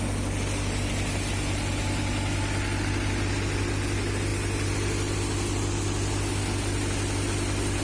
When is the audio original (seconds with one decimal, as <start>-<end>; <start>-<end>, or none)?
0.0-7.8